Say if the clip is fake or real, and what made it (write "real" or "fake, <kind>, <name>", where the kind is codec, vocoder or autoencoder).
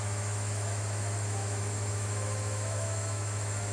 fake, autoencoder, DAC-VAE